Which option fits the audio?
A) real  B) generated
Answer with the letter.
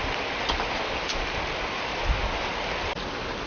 A